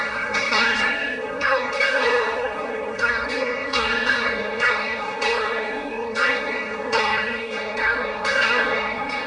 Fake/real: fake